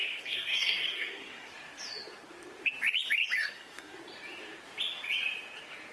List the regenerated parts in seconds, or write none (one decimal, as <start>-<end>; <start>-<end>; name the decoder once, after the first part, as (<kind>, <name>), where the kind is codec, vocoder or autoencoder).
0.0-1.5 (codec, SNAC); 3.4-4.0